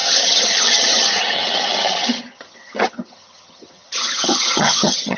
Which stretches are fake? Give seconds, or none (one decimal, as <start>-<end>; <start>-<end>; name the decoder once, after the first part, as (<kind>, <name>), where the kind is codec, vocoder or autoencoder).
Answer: 0.0-5.2 (vocoder, HiFi-GAN)